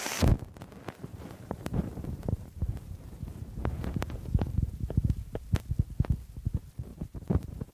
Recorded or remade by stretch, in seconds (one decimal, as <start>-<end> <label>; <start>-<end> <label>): 0.0-1.1 recorded; 1.1-5.7 remade; 5.7-6.9 recorded; 6.9-7.7 remade